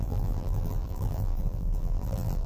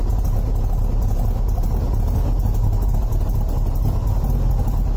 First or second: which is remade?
first